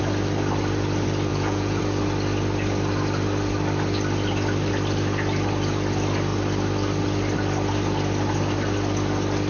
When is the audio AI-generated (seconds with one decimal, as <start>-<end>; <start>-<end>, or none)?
1.3-1.8